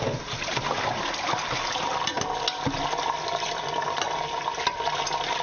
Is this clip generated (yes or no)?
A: no